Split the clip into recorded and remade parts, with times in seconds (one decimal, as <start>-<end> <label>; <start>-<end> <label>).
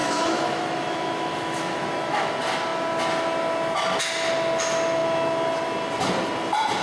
0.0-2.3 remade; 2.3-6.8 recorded